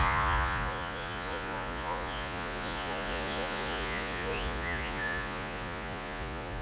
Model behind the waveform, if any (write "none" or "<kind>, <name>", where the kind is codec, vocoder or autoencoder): vocoder, Vocos